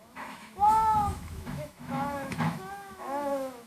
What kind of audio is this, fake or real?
fake